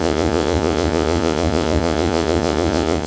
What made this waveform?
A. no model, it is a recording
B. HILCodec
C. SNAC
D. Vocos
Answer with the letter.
D